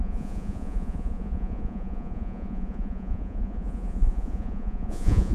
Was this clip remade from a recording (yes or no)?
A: yes